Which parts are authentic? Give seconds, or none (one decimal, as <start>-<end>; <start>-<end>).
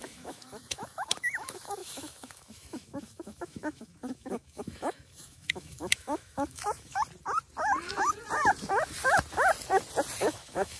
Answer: 7.0-10.2